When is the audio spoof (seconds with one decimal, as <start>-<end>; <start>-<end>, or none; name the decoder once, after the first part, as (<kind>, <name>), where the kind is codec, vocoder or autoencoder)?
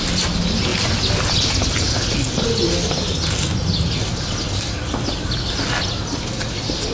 none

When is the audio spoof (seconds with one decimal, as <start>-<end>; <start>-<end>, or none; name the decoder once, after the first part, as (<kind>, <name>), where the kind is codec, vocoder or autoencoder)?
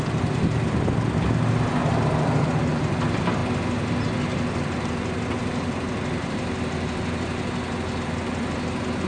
none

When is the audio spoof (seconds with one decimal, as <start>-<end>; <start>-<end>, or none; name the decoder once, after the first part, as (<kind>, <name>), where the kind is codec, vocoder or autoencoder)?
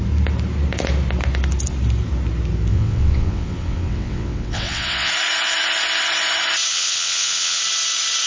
2.7-5.1 (vocoder, WaveNeXt); 6.7-7.6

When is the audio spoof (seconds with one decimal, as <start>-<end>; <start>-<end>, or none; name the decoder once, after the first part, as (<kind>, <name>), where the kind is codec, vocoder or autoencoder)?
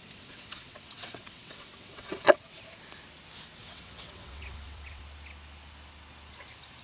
0.0-2.6 (vocoder, WaveNeXt); 3.6-5.0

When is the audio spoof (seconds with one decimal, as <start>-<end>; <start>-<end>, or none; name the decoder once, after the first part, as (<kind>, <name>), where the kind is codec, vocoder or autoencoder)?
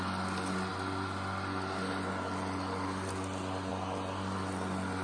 none